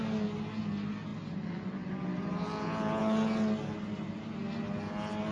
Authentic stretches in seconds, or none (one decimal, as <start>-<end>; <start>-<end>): 0.0-5.3